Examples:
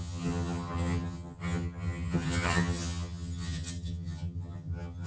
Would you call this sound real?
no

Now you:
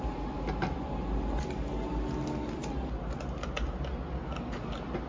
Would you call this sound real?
yes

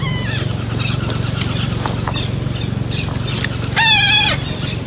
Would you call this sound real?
yes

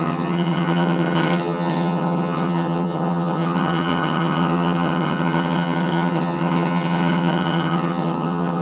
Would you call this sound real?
no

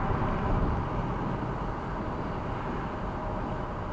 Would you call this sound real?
yes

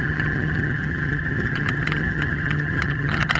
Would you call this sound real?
no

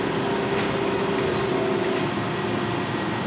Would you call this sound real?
yes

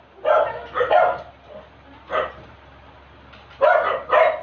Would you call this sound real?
yes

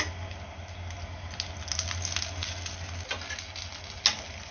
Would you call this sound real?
yes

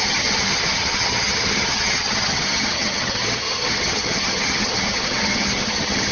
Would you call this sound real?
no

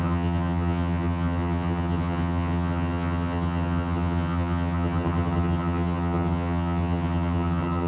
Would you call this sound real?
no